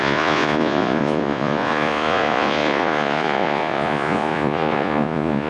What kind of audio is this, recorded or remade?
remade